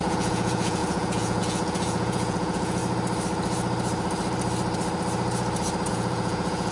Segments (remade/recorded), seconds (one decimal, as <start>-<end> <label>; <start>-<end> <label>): 0.0-2.8 remade; 2.8-5.9 recorded; 5.9-6.7 remade